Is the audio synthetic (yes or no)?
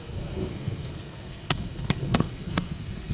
yes